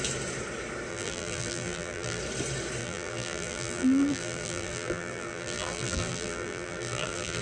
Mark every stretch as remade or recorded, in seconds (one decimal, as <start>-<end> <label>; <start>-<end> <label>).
0.0-0.9 recorded; 0.9-2.2 remade; 2.2-2.8 recorded; 2.8-7.4 remade